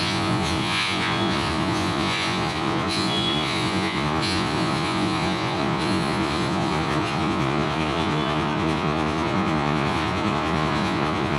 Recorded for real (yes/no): no